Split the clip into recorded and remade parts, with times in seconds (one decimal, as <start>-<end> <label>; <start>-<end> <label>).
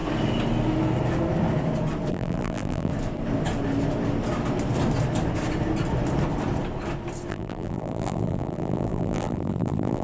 0.0-2.1 recorded; 2.1-2.9 remade; 2.9-7.3 recorded; 7.3-10.0 remade